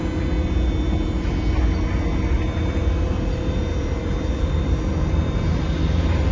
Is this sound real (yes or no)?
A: yes